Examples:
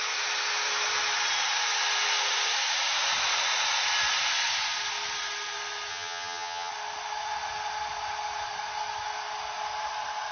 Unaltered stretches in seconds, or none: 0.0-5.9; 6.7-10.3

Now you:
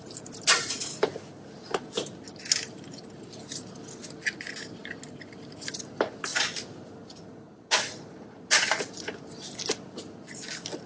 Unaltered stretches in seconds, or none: 0.0-10.9

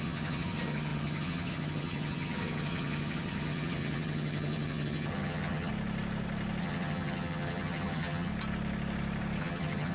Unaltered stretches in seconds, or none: 5.7-6.6; 8.3-9.4